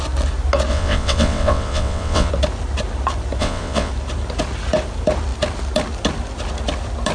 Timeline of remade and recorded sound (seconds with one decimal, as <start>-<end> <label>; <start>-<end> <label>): 0.0-0.7 recorded; 0.7-2.3 remade; 2.3-3.4 recorded; 3.4-3.9 remade; 3.9-7.1 recorded